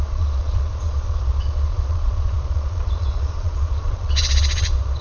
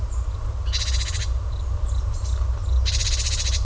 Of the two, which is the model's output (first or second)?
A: first